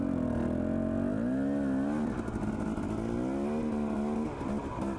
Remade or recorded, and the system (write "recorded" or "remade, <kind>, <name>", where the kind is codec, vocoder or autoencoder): recorded